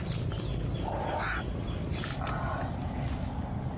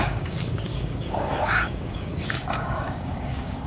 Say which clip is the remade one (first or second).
second